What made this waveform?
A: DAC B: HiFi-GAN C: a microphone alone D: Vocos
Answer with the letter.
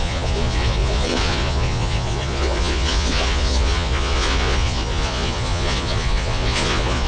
D